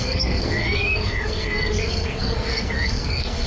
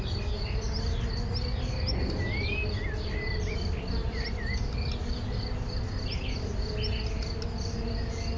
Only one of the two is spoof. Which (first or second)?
first